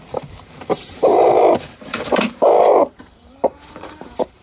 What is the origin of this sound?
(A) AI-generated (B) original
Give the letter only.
A